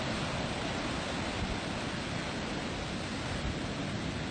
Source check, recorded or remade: recorded